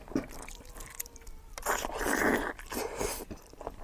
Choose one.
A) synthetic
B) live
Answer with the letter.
B